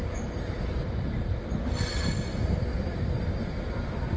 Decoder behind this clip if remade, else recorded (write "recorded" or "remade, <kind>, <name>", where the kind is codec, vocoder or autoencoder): recorded